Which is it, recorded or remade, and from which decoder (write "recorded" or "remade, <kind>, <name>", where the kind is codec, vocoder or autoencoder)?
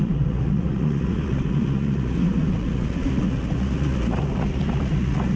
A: remade, vocoder, Vocos